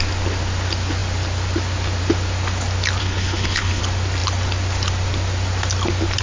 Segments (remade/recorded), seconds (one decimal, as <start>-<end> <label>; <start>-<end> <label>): 0.0-3.0 recorded; 3.0-3.8 remade; 3.8-6.2 recorded